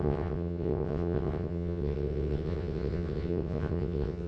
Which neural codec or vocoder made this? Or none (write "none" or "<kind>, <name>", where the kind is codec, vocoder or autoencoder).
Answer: vocoder, WaveNeXt